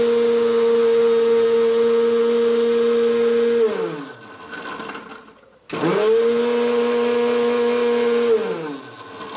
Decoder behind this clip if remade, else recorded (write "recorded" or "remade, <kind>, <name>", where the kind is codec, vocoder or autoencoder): recorded